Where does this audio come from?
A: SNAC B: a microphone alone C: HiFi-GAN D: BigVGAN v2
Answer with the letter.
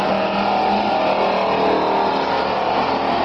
B